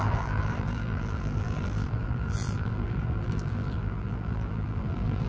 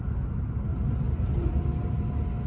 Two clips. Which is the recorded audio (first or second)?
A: second